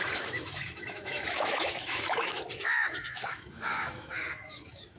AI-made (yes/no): yes